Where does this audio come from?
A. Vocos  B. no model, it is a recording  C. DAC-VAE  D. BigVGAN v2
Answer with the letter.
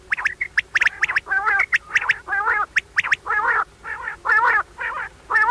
B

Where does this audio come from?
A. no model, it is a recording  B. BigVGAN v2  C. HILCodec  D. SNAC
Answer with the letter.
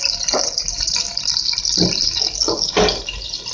A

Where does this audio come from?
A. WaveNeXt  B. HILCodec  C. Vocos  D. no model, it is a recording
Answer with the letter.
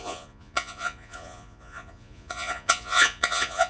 C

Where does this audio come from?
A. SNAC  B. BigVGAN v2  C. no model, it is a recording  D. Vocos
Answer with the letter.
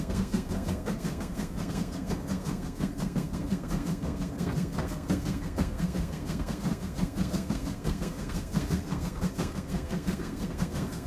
A